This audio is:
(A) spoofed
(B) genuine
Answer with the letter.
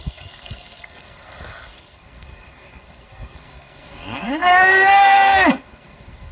A